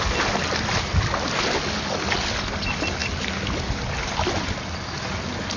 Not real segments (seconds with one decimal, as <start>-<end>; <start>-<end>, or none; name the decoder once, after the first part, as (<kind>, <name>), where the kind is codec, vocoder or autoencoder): none